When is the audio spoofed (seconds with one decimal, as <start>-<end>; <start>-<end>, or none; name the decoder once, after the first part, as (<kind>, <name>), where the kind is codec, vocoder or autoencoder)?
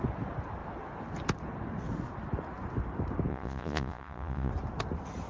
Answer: 3.3-4.5 (vocoder, Vocos)